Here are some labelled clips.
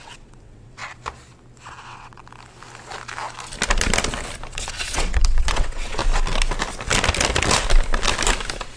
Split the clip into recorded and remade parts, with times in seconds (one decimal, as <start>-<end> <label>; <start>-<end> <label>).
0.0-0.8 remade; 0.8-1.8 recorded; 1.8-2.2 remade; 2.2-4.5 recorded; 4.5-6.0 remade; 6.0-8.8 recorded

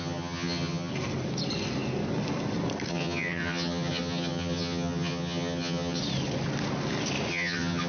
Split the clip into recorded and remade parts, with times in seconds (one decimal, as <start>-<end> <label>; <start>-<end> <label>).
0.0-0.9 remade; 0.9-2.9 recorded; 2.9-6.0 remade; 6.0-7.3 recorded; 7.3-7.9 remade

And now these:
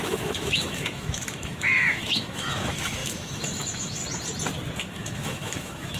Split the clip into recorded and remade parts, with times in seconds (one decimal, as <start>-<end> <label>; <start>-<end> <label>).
0.0-4.0 remade; 4.0-4.8 recorded; 4.8-6.0 remade